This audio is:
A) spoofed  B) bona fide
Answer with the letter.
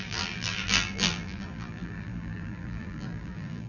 A